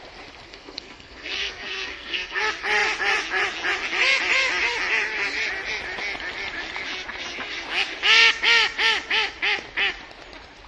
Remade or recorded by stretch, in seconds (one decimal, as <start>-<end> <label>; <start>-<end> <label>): 0.0-0.5 recorded; 0.5-2.4 remade; 2.4-10.7 recorded